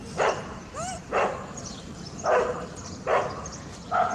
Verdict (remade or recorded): recorded